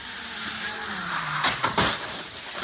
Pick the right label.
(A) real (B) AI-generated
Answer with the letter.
A